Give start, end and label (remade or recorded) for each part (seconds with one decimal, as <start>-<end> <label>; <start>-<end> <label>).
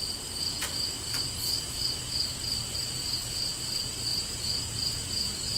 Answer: 0.0-4.1 recorded; 4.1-5.6 remade